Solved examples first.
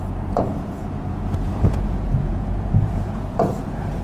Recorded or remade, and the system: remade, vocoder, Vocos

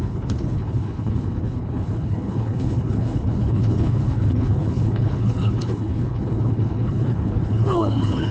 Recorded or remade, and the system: remade, codec, HILCodec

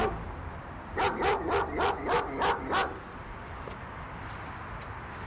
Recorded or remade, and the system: recorded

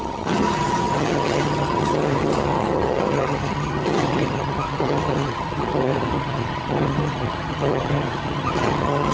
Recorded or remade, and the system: remade, vocoder, HiFi-GAN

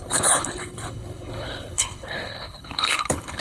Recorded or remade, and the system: remade, codec, HILCodec